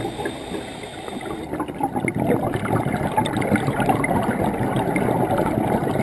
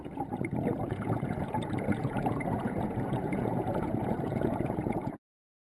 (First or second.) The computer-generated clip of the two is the second